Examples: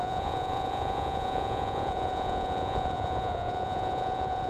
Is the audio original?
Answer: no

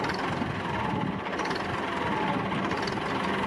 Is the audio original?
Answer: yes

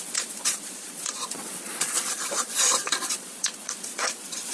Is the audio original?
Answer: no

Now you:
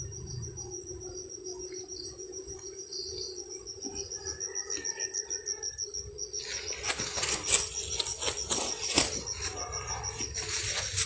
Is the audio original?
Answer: yes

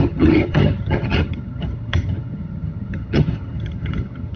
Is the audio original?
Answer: no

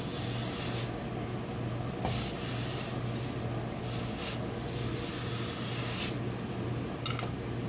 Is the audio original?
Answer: yes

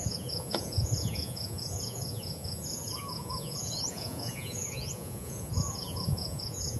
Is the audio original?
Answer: no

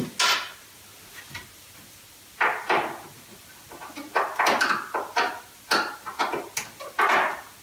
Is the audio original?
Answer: yes